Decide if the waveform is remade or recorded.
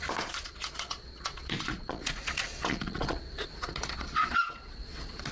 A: remade